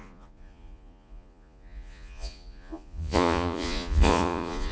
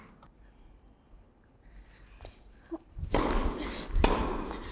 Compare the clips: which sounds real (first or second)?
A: second